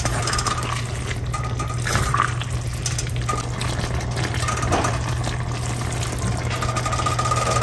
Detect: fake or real real